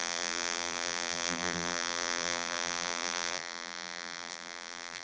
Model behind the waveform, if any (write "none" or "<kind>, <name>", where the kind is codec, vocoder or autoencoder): vocoder, BigVGAN v2